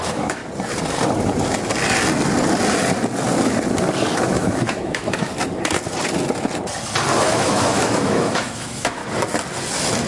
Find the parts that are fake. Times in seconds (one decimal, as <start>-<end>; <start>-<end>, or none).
0.0-0.4; 4.2-5.3; 7.3-9.0